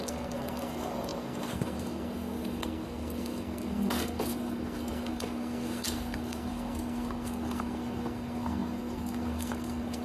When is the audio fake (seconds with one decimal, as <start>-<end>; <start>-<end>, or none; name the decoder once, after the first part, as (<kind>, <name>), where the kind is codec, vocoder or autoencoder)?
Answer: 0.0-10.0 (codec, SNAC)